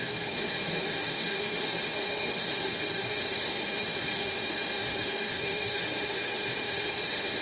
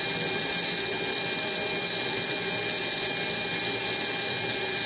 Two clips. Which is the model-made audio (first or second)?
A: first